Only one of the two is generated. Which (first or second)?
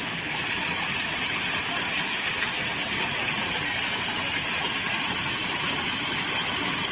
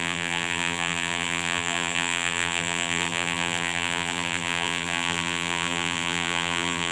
second